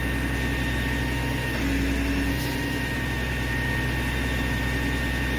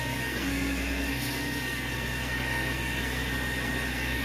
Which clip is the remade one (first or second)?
second